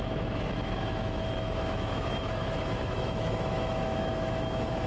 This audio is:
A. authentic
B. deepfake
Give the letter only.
B